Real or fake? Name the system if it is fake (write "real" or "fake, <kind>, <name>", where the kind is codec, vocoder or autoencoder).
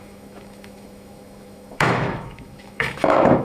fake, autoencoder, DAC-VAE